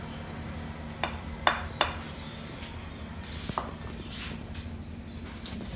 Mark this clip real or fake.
real